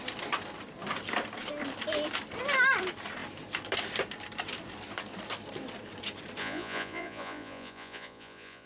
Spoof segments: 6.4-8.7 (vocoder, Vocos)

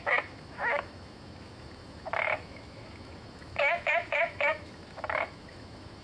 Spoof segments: 0.0-6.0 (autoencoder, DAC-VAE)

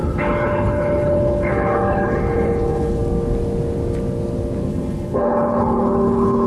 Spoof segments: 0.0-3.0 (codec, HILCodec); 4.7-6.5